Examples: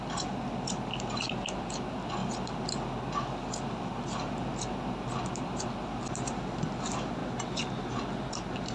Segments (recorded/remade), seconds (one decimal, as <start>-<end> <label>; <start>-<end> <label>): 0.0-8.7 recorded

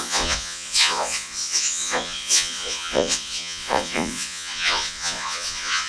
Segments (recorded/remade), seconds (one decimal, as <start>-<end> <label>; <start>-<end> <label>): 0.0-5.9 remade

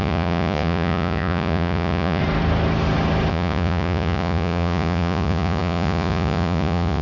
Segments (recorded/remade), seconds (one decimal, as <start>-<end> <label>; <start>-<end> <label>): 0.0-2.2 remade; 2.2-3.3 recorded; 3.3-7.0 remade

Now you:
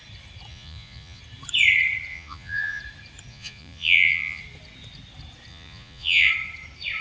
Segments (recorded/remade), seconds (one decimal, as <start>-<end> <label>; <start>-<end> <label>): 0.0-0.5 recorded; 0.5-1.2 remade; 1.2-2.1 recorded; 2.1-2.8 remade; 2.8-3.3 recorded; 3.3-4.4 remade; 4.4-5.5 recorded; 5.5-6.3 remade; 6.3-7.0 recorded

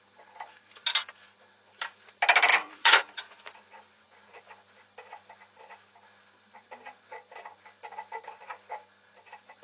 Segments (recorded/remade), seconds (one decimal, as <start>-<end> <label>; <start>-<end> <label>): 0.0-2.5 recorded; 2.5-4.4 remade; 4.4-9.6 recorded